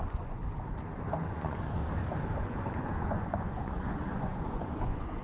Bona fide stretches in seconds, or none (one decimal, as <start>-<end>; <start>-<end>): 0.4-1.3; 1.8-2.4